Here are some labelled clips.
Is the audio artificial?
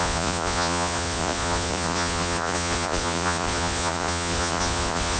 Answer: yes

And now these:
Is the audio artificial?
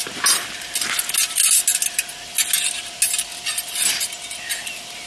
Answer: no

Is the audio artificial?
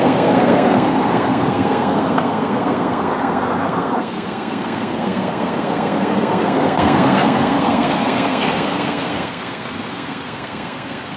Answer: yes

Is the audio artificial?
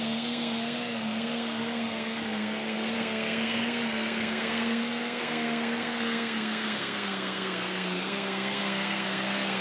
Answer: yes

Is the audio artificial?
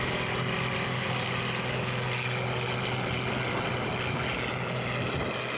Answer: no